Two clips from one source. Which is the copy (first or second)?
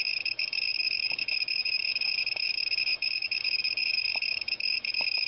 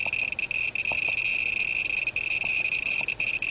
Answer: first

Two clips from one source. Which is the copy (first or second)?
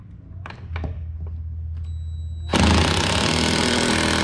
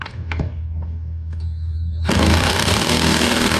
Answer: second